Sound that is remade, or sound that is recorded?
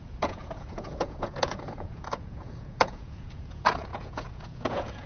remade